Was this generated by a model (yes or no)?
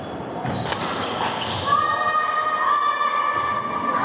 no